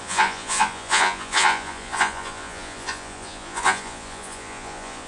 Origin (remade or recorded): remade